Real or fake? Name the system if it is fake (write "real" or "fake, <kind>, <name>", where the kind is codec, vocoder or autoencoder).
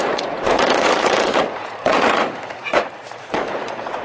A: fake, vocoder, Vocos